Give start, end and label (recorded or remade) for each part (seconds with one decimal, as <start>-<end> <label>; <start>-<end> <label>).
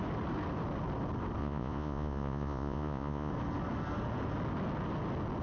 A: 0.0-1.4 recorded; 1.4-3.3 remade; 3.3-5.4 recorded